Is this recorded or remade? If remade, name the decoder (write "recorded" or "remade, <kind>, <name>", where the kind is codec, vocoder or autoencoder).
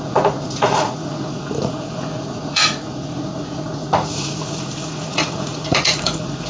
remade, vocoder, Vocos